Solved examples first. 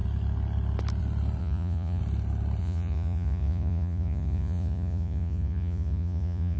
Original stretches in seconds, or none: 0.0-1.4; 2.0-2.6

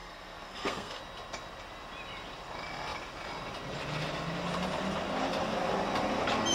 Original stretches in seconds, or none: 1.0-6.5

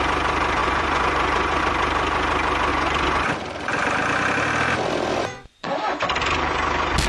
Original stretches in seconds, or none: 0.0-0.6; 1.6-2.7; 3.3-5.1; 5.7-7.1

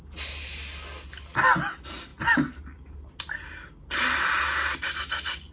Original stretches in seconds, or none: 0.0-5.5

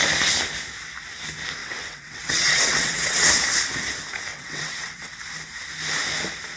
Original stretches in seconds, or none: 0.0-1.6; 3.3-4.3; 5.2-6.6

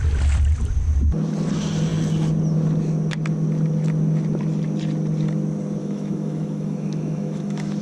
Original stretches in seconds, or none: 0.0-5.8

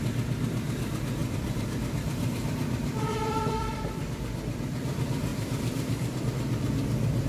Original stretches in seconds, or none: 0.0-1.2; 4.1-5.3; 6.2-7.3